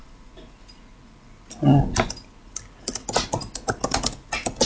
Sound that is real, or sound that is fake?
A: real